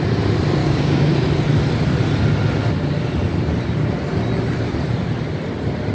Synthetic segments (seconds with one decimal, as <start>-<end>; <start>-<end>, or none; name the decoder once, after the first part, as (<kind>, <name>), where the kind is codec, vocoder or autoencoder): 0.6-1.1 (codec, DAC)